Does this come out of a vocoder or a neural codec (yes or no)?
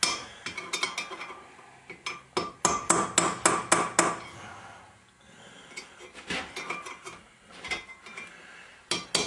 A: no